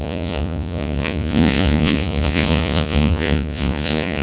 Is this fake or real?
fake